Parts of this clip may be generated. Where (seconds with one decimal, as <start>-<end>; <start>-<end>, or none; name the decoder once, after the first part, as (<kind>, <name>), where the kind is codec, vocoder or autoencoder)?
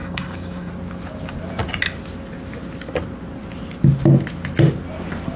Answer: 0.0-0.7 (codec, DAC)